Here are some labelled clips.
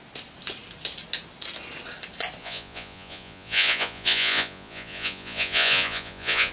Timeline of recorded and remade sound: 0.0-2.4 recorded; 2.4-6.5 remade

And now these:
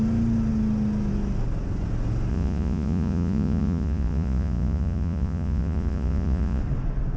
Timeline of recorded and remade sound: 0.0-2.3 recorded; 2.3-6.6 remade; 6.6-7.2 recorded

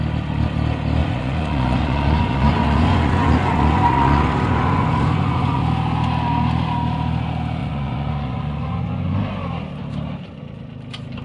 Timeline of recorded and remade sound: 0.0-1.0 recorded; 1.0-5.6 remade; 5.6-7.6 recorded; 7.6-9.2 remade; 9.2-11.2 recorded

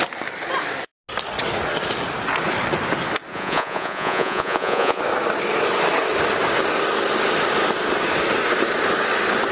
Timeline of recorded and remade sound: 0.0-3.3 recorded; 3.3-5.0 remade; 5.0-9.5 recorded

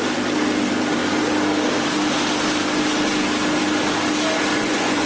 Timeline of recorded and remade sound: 0.0-4.5 recorded; 4.5-5.1 remade